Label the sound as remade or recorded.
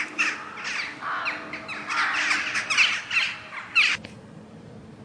recorded